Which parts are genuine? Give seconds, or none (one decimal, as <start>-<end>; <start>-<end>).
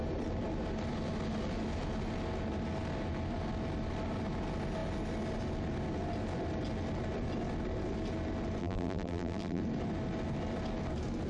0.0-8.6; 9.6-11.3